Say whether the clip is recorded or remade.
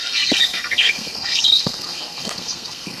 remade